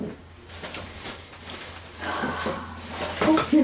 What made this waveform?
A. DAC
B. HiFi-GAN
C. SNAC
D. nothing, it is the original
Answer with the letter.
D